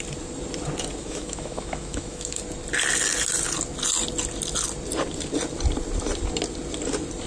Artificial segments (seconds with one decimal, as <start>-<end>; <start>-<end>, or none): 1.0-2.4